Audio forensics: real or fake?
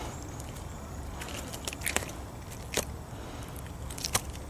real